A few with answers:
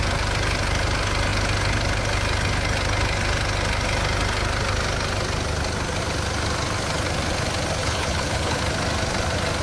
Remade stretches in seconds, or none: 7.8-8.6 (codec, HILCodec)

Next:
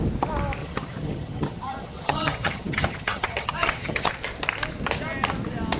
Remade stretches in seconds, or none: 0.6-4.1 (vocoder, HiFi-GAN)